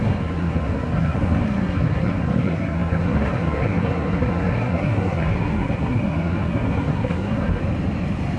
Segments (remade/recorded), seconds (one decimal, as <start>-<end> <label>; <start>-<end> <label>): 0.0-7.6 remade; 7.6-8.4 recorded